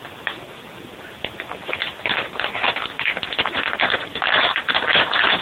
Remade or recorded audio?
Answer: recorded